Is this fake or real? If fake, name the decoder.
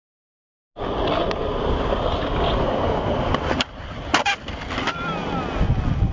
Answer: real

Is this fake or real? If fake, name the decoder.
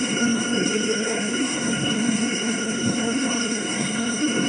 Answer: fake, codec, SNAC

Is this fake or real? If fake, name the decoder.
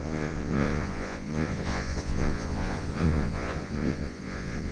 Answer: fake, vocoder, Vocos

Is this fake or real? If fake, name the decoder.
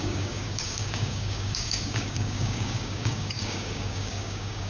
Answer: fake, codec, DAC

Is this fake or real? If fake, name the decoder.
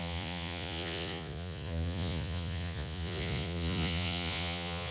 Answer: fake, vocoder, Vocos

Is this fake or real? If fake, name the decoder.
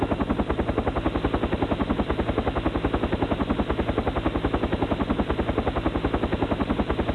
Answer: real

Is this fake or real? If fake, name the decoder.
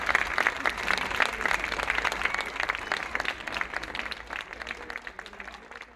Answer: real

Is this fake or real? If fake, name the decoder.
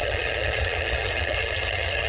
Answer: fake, vocoder, HiFi-GAN